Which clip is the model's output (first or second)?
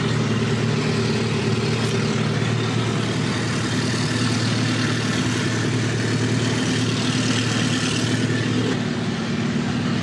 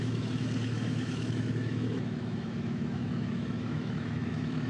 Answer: second